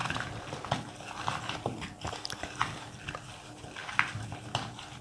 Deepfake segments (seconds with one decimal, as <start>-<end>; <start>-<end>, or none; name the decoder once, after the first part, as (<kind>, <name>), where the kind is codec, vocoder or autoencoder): none